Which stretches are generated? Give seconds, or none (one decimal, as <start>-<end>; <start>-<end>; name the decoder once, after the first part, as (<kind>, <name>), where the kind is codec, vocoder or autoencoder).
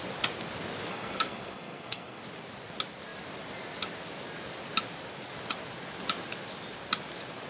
0.9-2.2 (codec, SNAC)